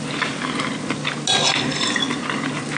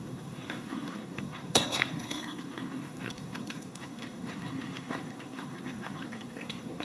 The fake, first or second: second